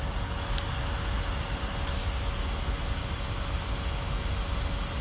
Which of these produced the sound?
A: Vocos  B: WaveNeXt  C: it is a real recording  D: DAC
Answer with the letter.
C